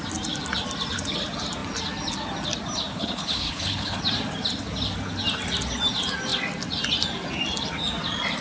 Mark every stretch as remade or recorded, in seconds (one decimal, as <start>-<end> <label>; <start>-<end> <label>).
0.0-2.9 recorded; 2.9-4.0 remade; 4.0-8.4 recorded

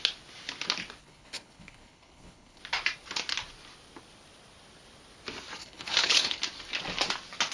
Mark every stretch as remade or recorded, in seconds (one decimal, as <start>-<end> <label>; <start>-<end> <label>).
0.0-1.0 recorded; 1.0-2.6 remade; 2.6-5.6 recorded; 5.6-6.4 remade; 6.4-7.5 recorded

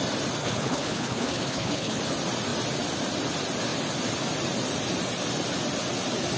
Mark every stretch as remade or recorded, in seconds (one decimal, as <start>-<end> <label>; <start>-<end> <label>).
0.0-0.4 recorded; 0.4-2.0 remade; 2.0-6.4 recorded